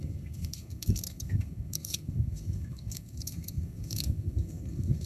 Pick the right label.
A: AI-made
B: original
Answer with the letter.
A